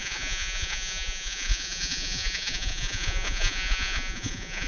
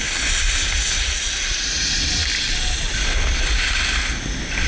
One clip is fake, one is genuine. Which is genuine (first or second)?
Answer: second